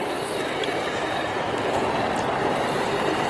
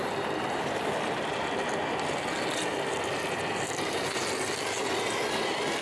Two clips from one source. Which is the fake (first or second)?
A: first